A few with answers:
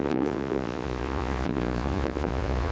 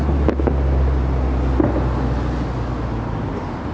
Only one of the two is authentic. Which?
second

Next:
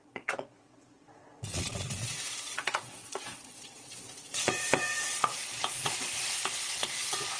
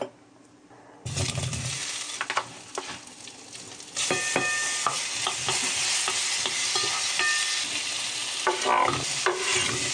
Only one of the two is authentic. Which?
second